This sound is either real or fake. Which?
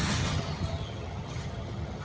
fake